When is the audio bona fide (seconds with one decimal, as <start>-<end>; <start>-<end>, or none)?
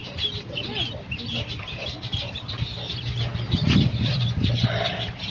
0.0-5.3